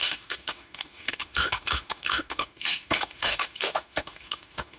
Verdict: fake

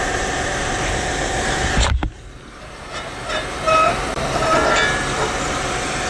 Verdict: real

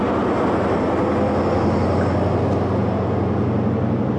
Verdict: real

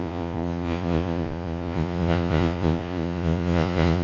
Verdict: fake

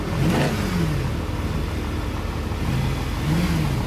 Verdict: real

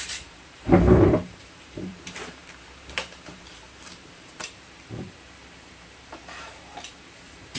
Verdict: fake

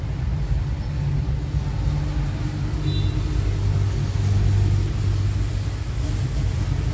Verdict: real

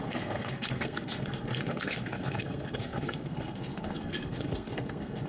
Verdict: fake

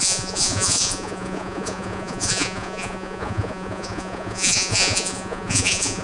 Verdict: fake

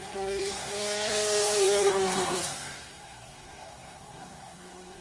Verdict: fake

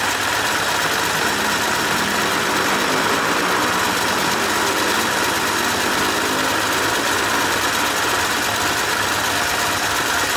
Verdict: real